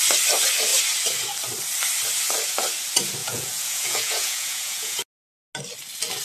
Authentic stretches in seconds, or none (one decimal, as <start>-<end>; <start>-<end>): 0.0-3.2; 5.0-6.2